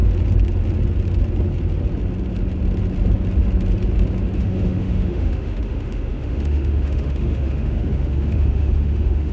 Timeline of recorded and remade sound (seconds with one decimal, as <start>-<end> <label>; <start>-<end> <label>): 0.0-4.4 recorded; 4.4-9.3 remade